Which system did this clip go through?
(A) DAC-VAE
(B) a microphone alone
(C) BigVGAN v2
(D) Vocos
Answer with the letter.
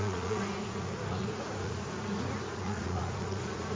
D